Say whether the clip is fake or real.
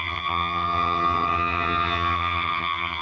fake